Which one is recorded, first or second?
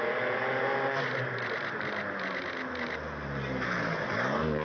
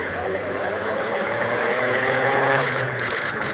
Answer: first